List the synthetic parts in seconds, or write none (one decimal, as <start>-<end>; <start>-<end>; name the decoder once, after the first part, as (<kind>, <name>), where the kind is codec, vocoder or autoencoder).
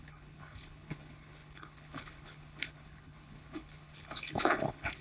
0.0-5.0 (codec, HILCodec)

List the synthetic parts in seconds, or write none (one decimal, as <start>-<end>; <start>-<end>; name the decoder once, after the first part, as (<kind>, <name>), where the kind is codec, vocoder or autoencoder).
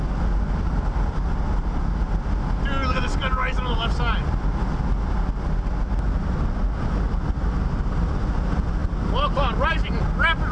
none